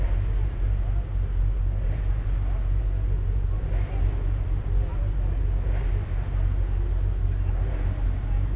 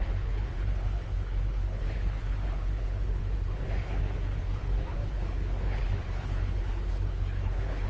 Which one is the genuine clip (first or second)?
first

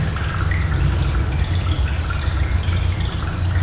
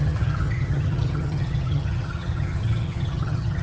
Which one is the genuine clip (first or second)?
first